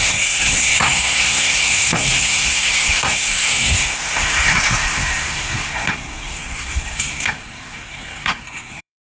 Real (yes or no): no